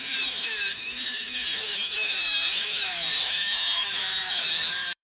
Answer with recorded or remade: remade